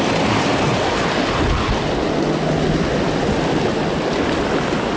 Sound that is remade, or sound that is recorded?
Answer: recorded